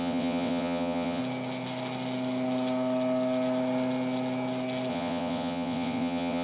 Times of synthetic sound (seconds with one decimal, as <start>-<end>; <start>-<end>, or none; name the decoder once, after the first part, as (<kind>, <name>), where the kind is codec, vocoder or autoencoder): 0.0-1.2 (vocoder, WaveNeXt); 4.9-6.4

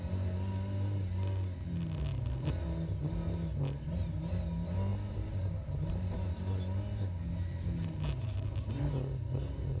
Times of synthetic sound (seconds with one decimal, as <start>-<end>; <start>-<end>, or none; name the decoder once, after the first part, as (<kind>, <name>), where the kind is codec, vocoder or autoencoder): none

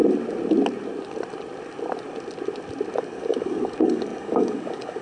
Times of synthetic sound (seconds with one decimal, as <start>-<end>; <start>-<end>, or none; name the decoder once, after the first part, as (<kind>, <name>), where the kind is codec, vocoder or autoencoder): 3.0-5.0 (codec, DAC)